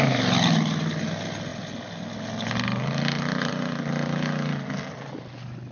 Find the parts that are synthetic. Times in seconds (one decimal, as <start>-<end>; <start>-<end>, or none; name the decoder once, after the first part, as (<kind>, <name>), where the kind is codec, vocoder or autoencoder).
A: none